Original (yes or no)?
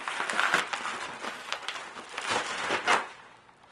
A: yes